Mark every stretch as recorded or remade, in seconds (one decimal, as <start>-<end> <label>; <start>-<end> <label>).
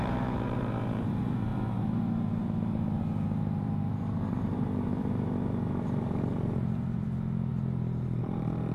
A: 0.0-8.7 remade